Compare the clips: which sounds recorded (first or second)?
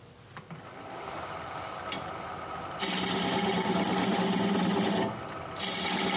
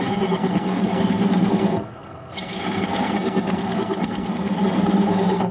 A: first